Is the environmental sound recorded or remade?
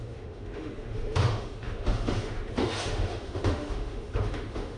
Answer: remade